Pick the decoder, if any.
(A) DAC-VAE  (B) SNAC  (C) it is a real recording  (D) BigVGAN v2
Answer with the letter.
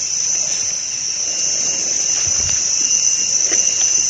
C